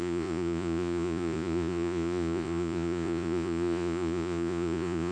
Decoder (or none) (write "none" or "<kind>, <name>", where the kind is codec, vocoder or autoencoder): vocoder, Vocos